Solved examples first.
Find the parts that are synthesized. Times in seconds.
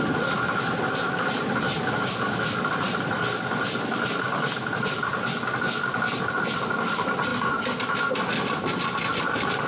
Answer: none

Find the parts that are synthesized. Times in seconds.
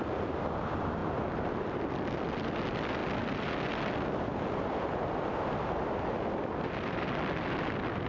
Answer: none